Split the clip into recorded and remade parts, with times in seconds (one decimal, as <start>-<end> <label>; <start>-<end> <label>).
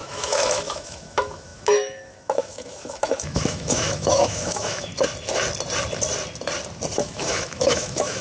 0.0-4.9 remade; 4.9-7.0 recorded; 7.0-8.2 remade